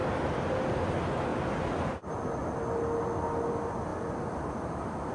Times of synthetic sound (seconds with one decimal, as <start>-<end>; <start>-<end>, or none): 0.0-0.7; 3.9-5.1